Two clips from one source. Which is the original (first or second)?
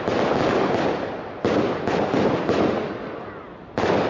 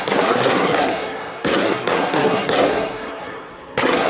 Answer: first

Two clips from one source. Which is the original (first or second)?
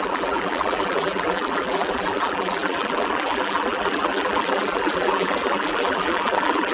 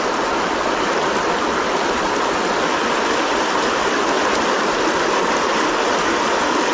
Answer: second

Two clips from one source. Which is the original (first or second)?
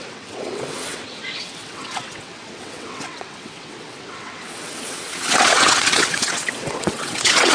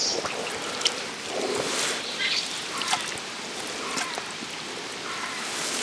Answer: second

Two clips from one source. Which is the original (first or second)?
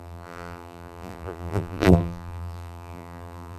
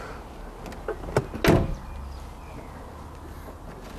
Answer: second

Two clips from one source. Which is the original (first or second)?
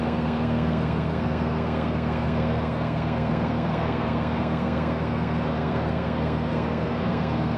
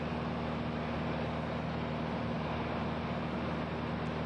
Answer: second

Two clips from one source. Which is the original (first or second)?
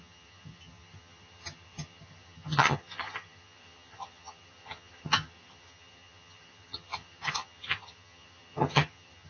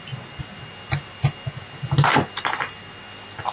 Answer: second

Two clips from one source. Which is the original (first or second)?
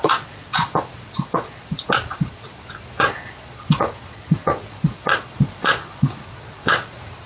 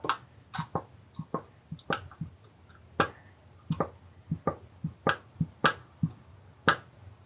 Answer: second